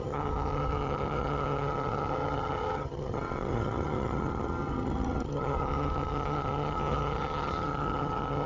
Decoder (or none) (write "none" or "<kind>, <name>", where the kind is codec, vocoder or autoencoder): vocoder, HiFi-GAN